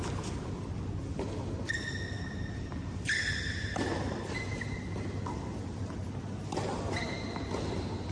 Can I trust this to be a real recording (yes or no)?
yes